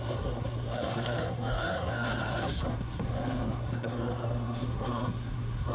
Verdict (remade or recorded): remade